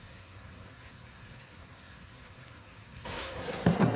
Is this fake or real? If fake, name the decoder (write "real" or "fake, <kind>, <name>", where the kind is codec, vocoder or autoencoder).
fake, codec, SNAC